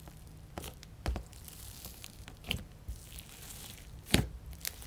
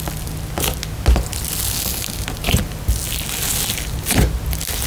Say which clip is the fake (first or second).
first